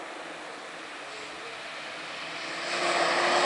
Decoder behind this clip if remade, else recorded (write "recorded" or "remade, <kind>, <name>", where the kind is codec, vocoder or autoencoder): recorded